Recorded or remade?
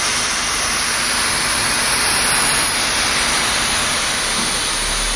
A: recorded